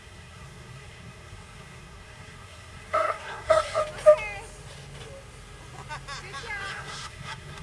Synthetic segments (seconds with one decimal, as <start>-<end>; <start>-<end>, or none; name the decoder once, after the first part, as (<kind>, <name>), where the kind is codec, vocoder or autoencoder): 0.0-3.8 (codec, SNAC); 6.7-7.6